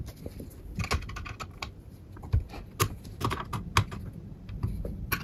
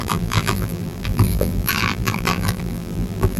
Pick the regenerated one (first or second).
second